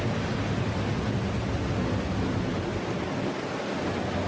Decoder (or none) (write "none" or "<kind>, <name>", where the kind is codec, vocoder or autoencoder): none